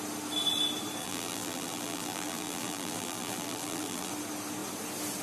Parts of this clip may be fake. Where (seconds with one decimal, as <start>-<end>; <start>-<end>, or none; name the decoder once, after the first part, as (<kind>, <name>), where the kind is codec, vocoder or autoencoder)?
1.0-4.1 (vocoder, BigVGAN v2)